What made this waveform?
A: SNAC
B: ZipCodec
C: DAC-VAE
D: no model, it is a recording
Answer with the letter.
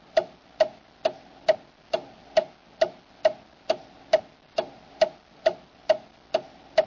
D